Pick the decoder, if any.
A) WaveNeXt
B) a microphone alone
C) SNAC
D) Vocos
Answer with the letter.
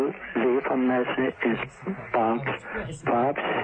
B